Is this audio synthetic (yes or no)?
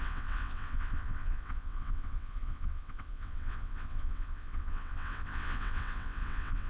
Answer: yes